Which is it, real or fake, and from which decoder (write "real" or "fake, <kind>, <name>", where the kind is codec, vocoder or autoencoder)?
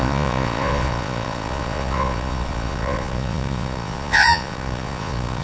fake, vocoder, Vocos